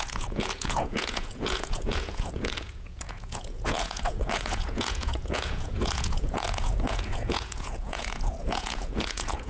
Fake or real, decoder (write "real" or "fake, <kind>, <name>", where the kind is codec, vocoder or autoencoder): fake, vocoder, Vocos